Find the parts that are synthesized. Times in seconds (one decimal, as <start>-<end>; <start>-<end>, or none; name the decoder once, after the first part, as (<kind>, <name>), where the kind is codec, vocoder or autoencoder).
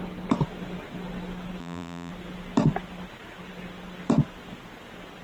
1.6-2.1 (vocoder, BigVGAN v2)